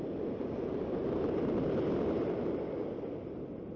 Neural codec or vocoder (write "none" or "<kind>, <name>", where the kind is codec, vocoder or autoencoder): none